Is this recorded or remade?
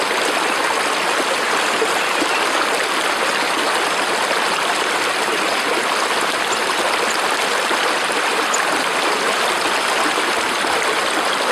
recorded